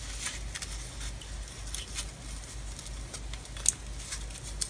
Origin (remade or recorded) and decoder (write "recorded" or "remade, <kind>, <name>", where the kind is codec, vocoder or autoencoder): recorded